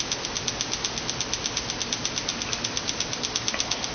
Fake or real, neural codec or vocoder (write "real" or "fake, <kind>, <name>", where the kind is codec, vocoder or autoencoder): real